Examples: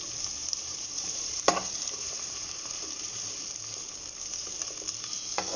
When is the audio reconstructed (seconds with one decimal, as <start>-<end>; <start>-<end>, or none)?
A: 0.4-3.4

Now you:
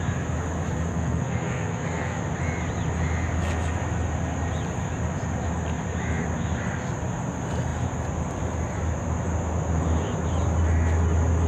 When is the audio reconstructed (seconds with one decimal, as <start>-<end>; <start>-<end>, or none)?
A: 0.9-2.2

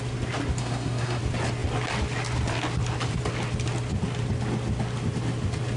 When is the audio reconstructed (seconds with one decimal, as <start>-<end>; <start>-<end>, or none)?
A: 0.6-1.2

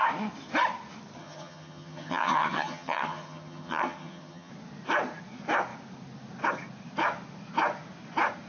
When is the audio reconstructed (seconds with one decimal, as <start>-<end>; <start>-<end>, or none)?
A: 1.2-4.5

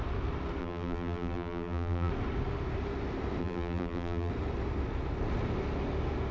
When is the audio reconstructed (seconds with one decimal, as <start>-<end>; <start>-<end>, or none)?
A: 0.6-2.1; 3.4-4.3

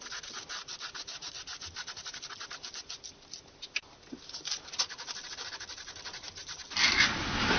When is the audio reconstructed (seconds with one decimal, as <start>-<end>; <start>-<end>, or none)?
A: 1.1-2.3

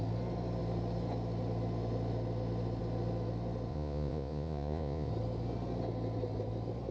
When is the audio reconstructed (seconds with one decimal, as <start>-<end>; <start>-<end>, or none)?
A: 3.7-5.1

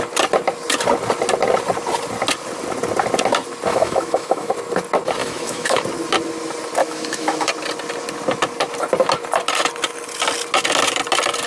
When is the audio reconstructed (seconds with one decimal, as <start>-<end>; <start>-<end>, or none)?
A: 3.7-4.5; 5.2-5.8; 6.8-7.5